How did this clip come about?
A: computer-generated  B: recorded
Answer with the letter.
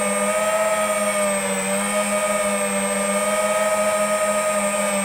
B